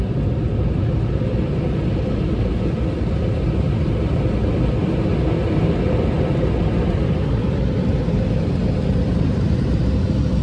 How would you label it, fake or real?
real